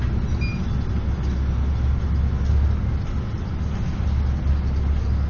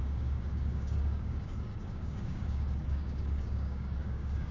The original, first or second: first